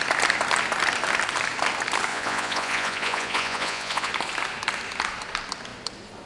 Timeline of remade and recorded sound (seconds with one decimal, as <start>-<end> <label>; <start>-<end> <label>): 0.0-2.1 recorded; 2.1-4.1 remade; 4.1-6.3 recorded